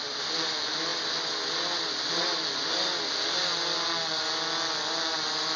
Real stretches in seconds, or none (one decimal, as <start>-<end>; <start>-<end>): 0.0-5.6